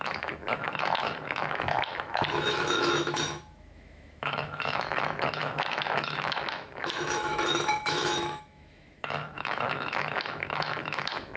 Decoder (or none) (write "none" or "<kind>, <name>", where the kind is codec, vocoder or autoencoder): autoencoder, DAC-VAE